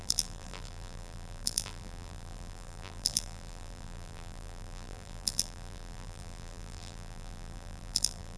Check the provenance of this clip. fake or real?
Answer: fake